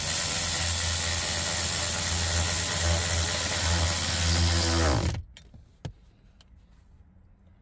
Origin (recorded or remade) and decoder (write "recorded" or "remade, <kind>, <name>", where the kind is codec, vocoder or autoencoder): recorded